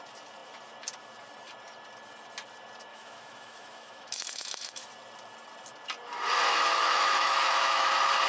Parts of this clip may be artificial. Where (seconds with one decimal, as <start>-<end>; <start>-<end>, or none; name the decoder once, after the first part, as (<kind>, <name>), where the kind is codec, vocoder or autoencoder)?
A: 2.9-4.9 (autoencoder, DAC-VAE); 6.5-7.9